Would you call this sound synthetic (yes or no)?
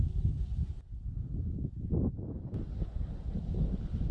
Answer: no